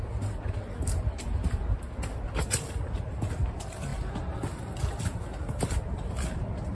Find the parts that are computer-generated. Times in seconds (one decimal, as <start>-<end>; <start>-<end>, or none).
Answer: none